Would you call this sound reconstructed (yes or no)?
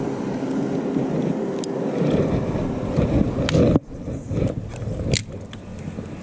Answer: no